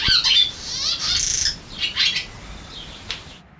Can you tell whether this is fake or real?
real